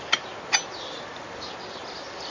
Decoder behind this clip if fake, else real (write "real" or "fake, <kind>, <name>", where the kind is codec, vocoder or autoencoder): real